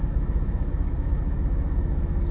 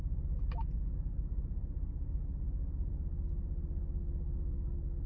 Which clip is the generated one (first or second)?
first